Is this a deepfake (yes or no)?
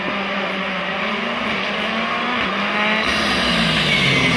no